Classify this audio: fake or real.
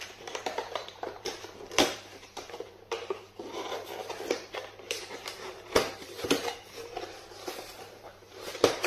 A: fake